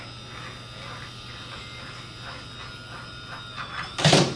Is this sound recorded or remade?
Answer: recorded